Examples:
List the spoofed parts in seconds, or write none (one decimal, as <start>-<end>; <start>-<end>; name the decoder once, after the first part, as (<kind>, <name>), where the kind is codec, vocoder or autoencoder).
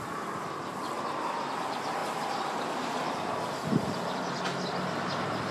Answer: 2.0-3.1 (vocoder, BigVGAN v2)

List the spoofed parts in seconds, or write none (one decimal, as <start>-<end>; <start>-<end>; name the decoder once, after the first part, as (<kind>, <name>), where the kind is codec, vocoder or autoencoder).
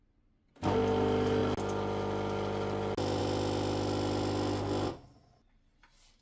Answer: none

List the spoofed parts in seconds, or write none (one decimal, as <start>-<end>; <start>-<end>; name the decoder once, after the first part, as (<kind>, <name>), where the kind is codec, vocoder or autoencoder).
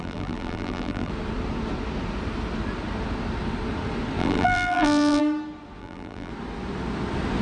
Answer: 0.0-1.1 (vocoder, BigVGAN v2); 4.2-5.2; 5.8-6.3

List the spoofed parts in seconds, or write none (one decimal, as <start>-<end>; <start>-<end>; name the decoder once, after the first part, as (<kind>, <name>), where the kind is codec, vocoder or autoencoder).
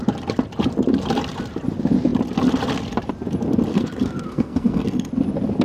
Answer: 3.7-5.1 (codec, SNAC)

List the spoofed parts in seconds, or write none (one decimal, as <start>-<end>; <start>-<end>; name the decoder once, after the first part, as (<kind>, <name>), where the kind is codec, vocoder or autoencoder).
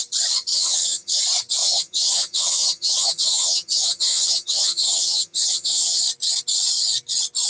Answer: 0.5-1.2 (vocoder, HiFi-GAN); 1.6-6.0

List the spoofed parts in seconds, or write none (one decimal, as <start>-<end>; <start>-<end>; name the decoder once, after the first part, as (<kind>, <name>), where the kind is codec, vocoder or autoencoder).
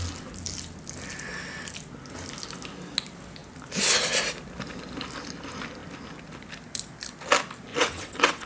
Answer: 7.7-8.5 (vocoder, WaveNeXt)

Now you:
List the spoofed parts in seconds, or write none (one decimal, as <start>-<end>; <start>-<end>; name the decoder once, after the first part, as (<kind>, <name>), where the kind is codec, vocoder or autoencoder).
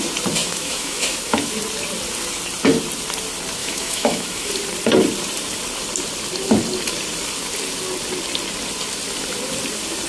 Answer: 0.4-1.5 (autoencoder, DAC-VAE); 3.6-4.5